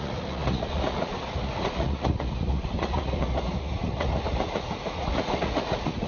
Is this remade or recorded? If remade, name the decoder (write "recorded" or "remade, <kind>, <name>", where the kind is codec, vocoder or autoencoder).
remade, vocoder, Vocos